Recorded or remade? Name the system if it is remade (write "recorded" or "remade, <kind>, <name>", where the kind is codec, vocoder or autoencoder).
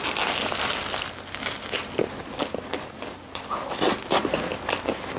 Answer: recorded